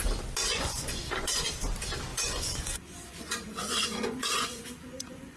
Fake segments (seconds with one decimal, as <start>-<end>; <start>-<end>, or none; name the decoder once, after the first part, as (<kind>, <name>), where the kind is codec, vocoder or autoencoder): 0.5-1.5 (vocoder, Vocos); 2.1-5.4